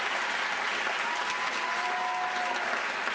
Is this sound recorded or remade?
recorded